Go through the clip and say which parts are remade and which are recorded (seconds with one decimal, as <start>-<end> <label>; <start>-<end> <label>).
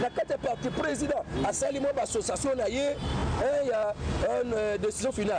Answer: 0.0-5.4 recorded